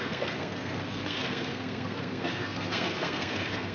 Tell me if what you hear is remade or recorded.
remade